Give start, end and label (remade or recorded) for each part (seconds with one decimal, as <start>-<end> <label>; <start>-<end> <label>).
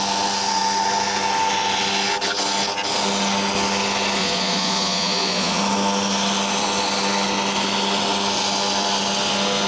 0.0-4.2 recorded; 4.2-5.6 remade; 5.6-9.7 recorded